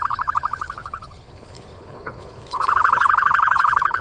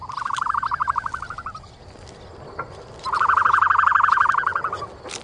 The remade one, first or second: first